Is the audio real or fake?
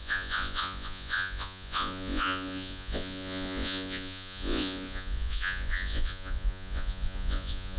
fake